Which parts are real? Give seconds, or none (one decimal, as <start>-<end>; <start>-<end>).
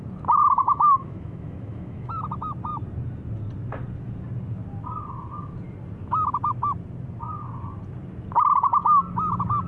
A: 0.0-0.4; 2.1-9.7